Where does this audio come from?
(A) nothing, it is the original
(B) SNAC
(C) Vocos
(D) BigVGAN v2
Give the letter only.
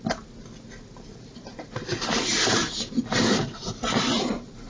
A